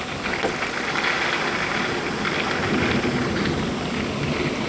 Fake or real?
real